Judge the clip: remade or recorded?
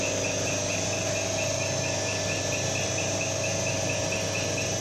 recorded